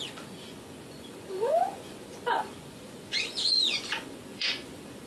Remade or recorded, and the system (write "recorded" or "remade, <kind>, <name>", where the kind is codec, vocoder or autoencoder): remade, vocoder, Vocos